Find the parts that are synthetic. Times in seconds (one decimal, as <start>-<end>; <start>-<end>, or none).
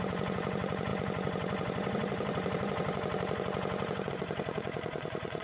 0.0-5.4